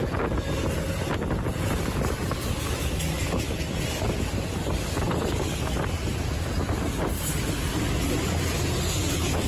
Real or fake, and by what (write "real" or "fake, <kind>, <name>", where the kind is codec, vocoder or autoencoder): real